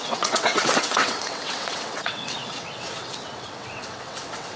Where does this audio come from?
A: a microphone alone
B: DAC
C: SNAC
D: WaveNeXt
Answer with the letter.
D